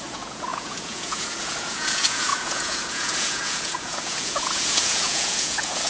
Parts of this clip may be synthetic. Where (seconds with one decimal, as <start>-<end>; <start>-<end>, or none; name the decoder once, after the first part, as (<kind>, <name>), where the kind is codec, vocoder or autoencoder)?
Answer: 0.0-5.9 (vocoder, Vocos)